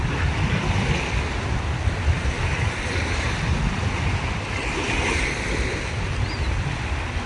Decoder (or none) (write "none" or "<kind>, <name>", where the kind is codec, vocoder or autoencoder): none